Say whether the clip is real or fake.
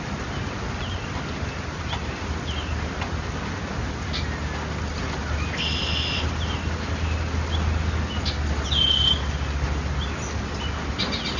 real